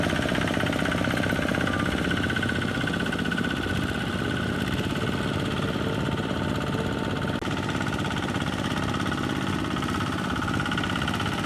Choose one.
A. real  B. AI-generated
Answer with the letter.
A